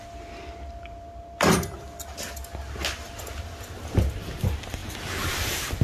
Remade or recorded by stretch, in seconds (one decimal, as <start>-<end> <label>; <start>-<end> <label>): 0.0-5.8 recorded